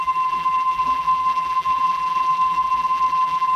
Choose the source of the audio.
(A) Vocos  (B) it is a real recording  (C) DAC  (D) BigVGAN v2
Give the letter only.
D